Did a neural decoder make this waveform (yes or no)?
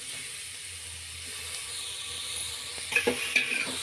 yes